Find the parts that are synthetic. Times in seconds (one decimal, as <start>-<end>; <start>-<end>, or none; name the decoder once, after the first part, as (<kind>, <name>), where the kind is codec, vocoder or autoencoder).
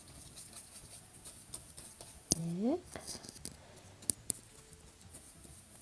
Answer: 0.0-2.4 (vocoder, Vocos); 5.1-5.8